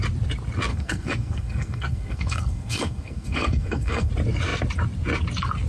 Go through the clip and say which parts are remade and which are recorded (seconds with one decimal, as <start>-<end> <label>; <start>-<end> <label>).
0.0-0.7 recorded; 0.7-4.1 remade; 4.1-5.7 recorded